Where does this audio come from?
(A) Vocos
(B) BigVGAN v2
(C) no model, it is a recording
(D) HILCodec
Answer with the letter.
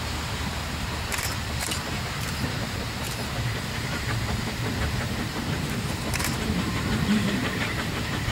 B